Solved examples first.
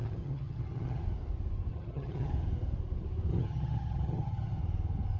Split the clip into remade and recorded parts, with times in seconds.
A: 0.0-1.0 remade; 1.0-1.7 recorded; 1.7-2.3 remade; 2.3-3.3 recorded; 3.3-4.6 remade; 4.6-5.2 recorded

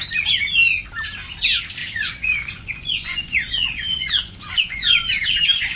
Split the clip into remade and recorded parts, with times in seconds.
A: 0.0-1.8 recorded; 1.8-5.1 remade; 5.1-5.8 recorded

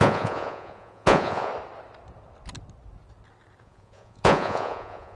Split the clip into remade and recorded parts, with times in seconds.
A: 0.0-1.5 remade; 1.5-3.6 recorded; 3.6-5.2 remade

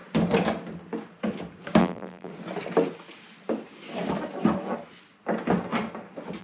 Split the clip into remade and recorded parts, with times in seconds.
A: 0.0-1.8 recorded; 1.8-2.3 remade; 2.3-6.4 recorded

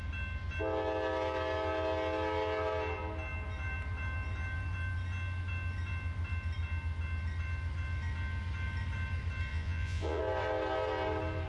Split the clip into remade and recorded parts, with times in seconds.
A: 0.0-9.5 recorded; 9.5-10.2 remade; 10.2-11.5 recorded

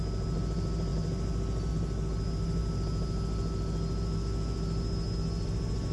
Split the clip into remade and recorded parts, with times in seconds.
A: 0.0-5.9 recorded